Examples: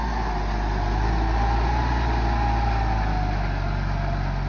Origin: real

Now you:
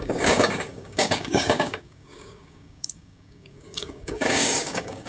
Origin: fake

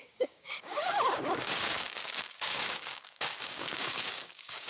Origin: fake